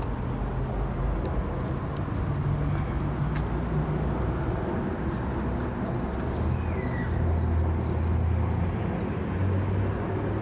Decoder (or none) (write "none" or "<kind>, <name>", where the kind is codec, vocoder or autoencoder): none